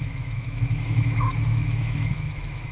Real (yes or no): no